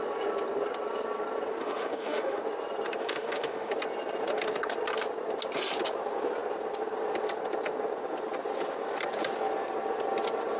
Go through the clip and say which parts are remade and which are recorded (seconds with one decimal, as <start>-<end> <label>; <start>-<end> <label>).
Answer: 0.0-1.6 recorded; 1.6-2.4 remade; 2.4-3.0 recorded; 3.0-3.7 remade; 3.7-10.6 recorded